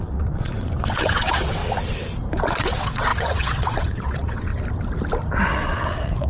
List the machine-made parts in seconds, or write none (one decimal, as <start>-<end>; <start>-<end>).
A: 0.0-1.6; 2.6-4.5; 5.5-6.3